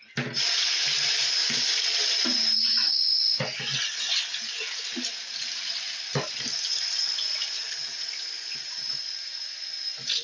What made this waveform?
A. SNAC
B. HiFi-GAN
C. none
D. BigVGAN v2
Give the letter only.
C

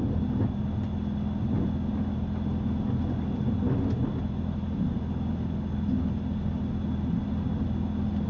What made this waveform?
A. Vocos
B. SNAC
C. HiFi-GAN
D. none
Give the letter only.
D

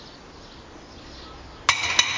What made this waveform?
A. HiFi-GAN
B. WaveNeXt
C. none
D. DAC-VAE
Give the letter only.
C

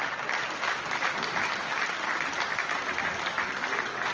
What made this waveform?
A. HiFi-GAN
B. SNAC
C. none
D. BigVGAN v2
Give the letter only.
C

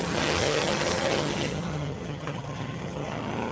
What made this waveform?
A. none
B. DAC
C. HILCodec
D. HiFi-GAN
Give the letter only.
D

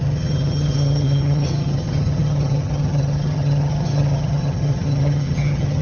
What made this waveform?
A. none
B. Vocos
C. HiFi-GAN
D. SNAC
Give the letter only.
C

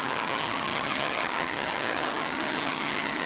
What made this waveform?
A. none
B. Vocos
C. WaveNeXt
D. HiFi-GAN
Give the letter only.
D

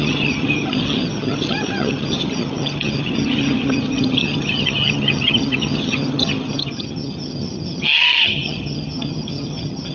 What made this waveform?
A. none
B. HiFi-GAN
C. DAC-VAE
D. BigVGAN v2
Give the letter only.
B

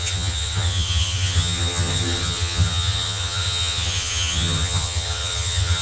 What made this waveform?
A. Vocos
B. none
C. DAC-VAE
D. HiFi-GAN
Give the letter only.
D